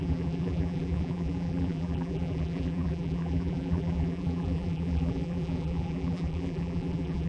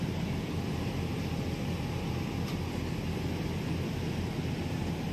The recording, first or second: second